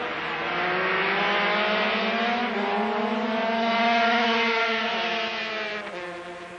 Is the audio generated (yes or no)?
no